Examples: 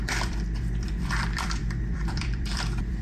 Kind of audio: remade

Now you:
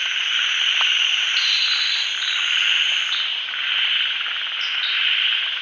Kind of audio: recorded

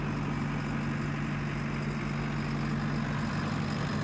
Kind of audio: recorded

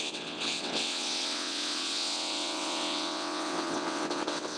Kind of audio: remade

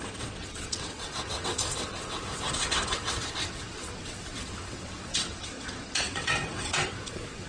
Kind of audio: remade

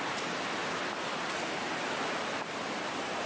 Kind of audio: recorded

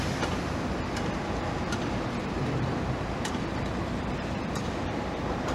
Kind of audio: remade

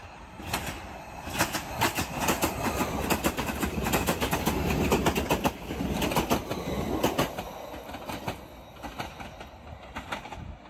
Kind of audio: recorded